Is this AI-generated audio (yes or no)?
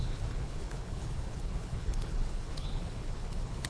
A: yes